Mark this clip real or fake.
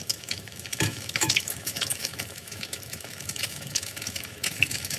fake